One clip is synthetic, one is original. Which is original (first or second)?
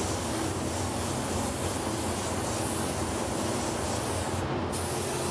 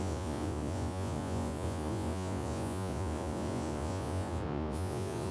first